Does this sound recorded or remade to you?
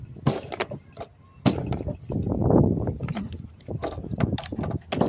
recorded